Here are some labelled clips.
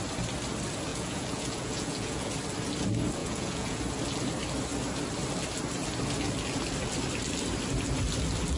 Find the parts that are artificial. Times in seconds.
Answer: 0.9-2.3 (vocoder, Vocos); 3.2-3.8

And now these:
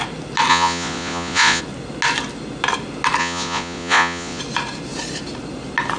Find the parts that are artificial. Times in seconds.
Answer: 0.5-1.6 (vocoder, Vocos); 3.2-4.4

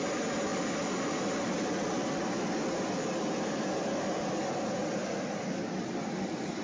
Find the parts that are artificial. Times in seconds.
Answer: none

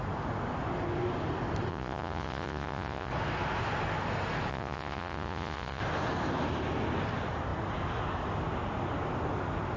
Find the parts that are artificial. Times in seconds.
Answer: 1.7-3.1 (vocoder, Vocos); 4.5-5.8

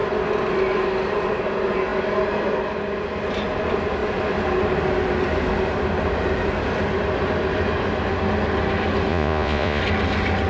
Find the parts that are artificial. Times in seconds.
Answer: 9.1-9.8 (vocoder, Vocos)

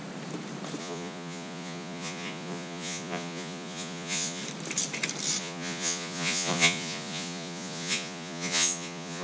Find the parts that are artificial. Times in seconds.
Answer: 0.8-4.4 (vocoder, Vocos); 5.4-9.2

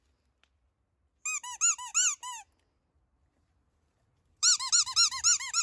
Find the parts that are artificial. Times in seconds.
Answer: none